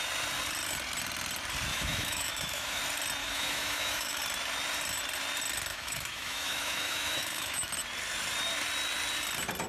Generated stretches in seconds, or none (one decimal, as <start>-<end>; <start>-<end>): 1.7-2.8; 3.2-4.2; 5.7-7.7